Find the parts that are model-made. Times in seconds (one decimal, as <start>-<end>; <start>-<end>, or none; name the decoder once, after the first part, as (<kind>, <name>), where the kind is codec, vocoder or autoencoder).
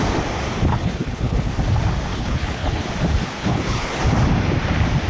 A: 0.7-1.5 (codec, HILCodec); 2.1-2.9; 3.4-4.0